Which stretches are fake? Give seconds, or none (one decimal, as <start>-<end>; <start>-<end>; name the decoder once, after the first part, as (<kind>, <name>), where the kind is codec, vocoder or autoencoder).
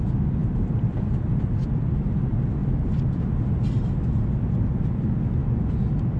0.4-1.9 (vocoder, BigVGAN v2); 2.6-4.6